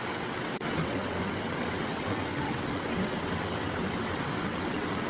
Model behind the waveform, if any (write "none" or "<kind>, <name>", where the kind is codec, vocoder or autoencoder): vocoder, WaveNeXt